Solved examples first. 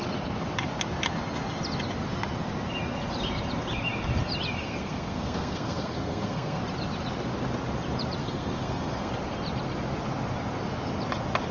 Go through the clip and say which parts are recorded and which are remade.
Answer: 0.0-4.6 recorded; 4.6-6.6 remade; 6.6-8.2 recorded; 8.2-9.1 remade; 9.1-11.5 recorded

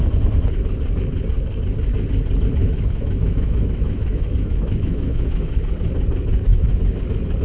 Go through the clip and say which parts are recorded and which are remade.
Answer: 0.0-2.6 recorded; 2.6-5.6 remade; 5.6-6.5 recorded; 6.5-7.0 remade; 7.0-7.4 recorded

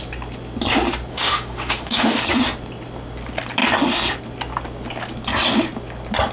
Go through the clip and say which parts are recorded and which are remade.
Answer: 0.0-1.1 recorded; 1.1-2.2 remade; 2.2-6.3 recorded

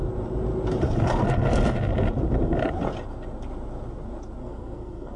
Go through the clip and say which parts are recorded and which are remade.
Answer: 0.0-4.4 recorded; 4.4-5.2 remade

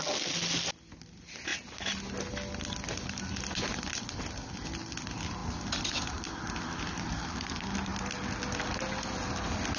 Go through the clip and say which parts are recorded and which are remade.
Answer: 0.0-9.8 recorded

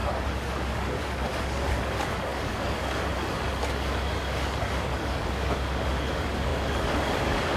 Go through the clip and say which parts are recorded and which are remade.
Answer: 0.0-7.6 remade

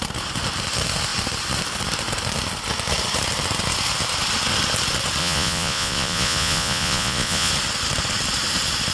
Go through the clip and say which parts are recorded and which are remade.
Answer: 0.0-5.2 recorded; 5.2-7.5 remade; 7.5-8.9 recorded

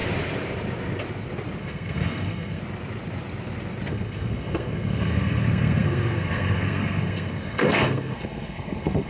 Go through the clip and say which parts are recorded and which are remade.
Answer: 0.0-1.6 recorded; 1.6-2.6 remade; 2.6-3.9 recorded; 3.9-9.1 remade